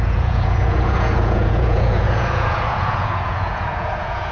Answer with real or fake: fake